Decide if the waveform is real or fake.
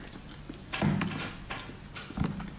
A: real